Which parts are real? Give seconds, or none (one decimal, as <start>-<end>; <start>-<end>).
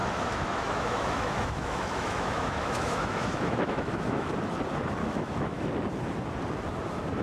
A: 4.3-5.0; 5.7-7.2